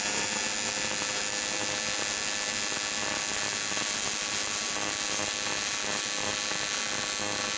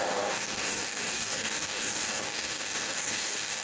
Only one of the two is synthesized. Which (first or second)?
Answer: second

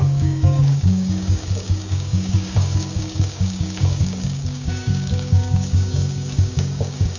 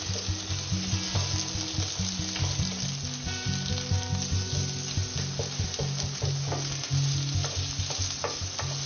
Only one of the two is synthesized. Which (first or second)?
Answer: first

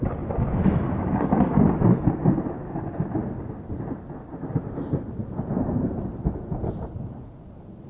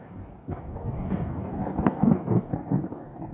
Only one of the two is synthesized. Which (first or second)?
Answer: second